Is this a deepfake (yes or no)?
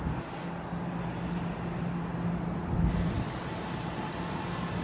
no